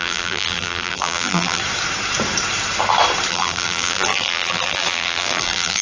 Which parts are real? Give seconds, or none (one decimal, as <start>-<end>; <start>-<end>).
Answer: 1.6-3.3